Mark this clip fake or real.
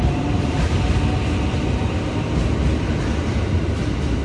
real